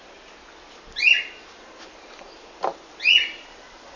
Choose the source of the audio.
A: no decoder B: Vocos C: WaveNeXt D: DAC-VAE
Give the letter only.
A